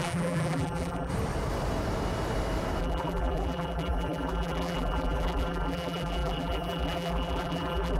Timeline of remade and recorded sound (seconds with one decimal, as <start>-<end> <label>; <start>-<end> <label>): 0.0-1.1 remade; 1.1-2.8 recorded; 2.8-8.0 remade